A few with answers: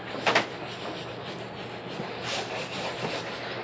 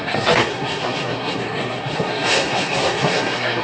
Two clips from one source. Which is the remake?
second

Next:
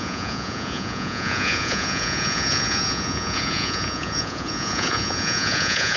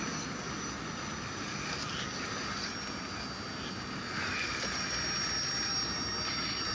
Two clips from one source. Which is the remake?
first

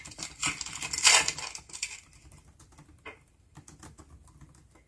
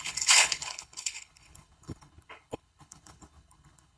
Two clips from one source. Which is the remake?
second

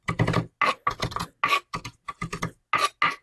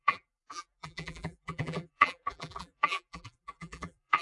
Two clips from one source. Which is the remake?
second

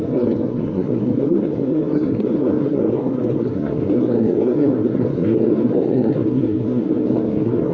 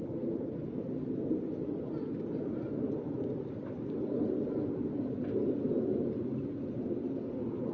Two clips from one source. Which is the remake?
first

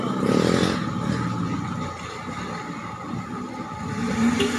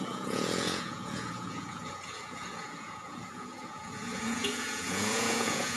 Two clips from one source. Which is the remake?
second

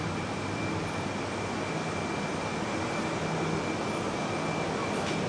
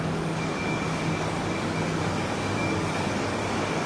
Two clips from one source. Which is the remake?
second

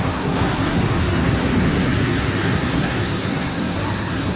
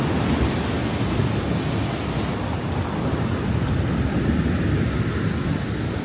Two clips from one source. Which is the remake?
first